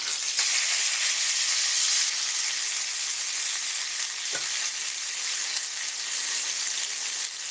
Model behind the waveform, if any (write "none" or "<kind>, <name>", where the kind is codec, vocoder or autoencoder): none